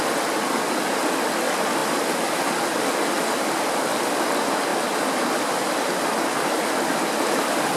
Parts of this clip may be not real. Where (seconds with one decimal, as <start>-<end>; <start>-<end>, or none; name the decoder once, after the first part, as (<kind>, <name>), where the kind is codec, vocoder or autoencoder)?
none